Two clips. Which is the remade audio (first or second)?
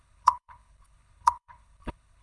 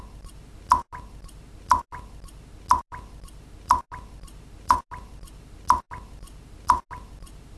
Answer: first